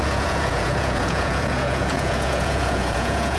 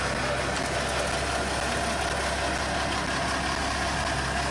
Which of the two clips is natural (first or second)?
second